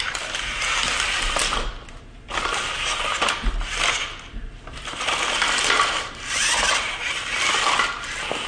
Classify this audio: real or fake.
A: real